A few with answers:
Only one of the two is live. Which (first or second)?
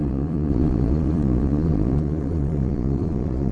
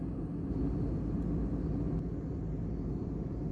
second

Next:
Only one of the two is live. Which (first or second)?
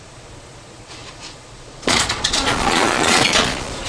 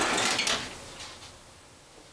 second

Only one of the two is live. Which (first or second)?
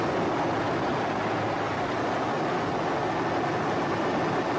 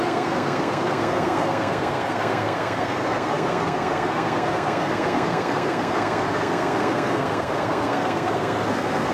first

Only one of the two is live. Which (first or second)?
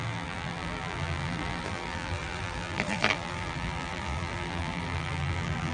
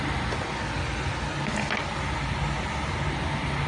second